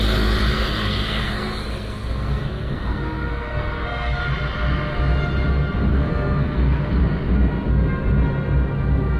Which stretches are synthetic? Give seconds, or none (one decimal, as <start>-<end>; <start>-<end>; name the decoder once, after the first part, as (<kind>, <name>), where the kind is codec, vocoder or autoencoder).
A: 0.5-4.2 (codec, SNAC); 5.9-7.0